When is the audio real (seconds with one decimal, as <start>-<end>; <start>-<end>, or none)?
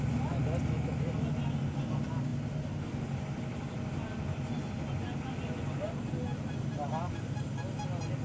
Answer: 0.0-8.2